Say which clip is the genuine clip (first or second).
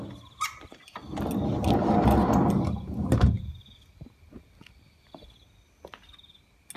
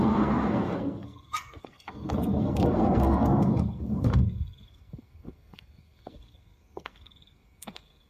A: first